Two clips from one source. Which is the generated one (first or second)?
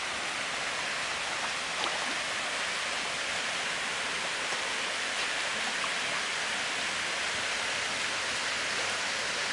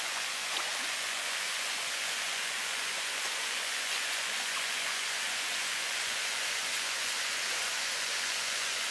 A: second